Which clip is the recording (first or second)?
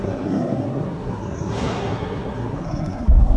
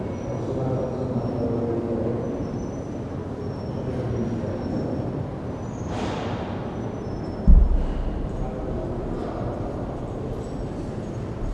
second